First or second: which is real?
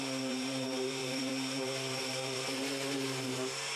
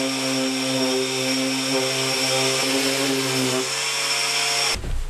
second